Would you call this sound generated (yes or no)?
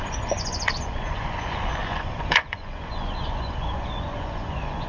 yes